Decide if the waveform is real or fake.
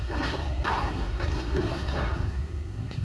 fake